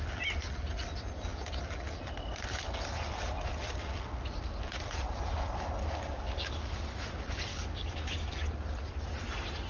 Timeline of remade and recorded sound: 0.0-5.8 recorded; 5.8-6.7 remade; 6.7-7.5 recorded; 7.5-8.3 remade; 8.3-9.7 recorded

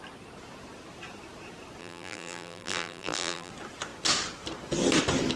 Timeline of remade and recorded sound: 0.0-1.8 recorded; 1.8-3.5 remade; 3.5-5.4 recorded

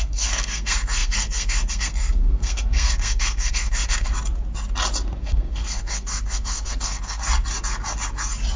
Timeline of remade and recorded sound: 0.0-4.1 remade; 4.1-5.2 recorded; 5.2-7.2 remade; 7.2-8.6 recorded